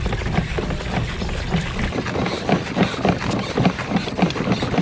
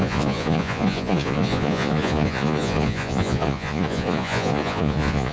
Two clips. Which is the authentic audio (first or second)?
first